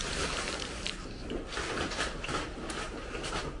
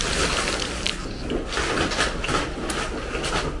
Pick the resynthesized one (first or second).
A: first